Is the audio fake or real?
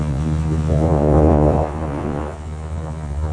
fake